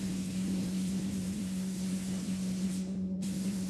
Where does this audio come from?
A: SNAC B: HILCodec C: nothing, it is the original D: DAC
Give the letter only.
A